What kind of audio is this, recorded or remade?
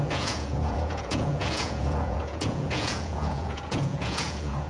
remade